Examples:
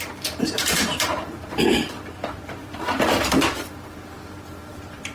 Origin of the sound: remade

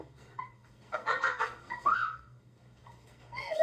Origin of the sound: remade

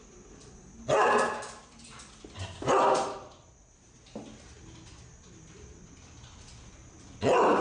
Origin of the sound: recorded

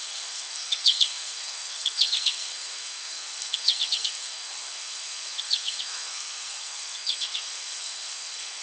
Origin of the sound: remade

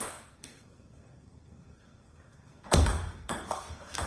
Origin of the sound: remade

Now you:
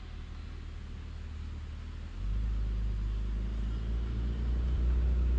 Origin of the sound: recorded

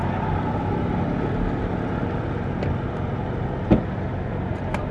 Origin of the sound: recorded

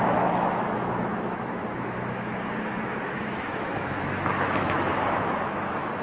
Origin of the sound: remade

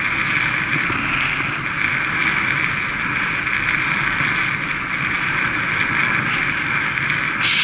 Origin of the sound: recorded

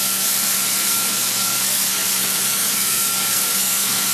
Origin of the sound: remade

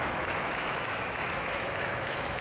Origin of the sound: remade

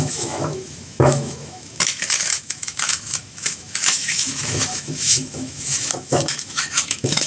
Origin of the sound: remade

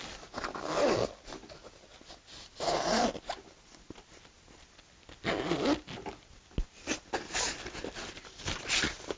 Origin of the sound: recorded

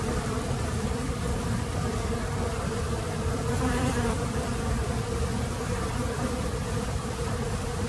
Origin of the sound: remade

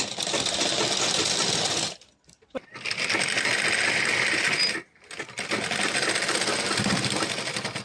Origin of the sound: recorded